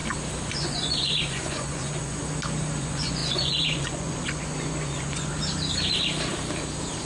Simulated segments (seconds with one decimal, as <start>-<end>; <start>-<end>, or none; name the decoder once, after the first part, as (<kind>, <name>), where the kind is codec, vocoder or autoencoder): 0.5-2.2 (vocoder, Vocos); 2.8-5.3